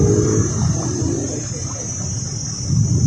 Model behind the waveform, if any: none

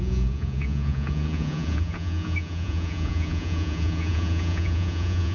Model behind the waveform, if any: vocoder, Vocos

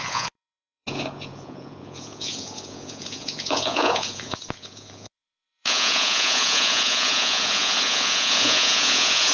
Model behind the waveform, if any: vocoder, Vocos